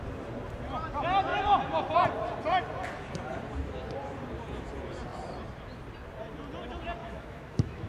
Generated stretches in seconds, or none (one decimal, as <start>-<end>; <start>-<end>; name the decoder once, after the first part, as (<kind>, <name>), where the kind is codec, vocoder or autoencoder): 7.0-7.9 (autoencoder, DAC-VAE)